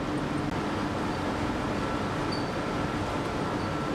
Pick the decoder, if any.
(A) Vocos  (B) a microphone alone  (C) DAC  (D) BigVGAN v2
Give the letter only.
B